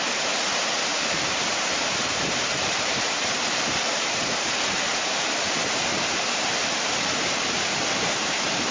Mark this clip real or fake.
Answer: fake